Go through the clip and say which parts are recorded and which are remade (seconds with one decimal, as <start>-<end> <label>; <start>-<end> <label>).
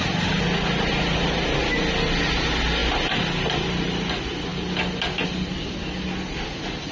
0.0-6.9 recorded